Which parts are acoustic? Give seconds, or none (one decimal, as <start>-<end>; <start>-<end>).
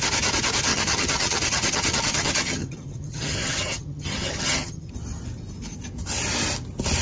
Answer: 0.0-0.7; 4.9-7.0